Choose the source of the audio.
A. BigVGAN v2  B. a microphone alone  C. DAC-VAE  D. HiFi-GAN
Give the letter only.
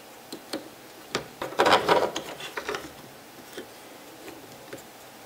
A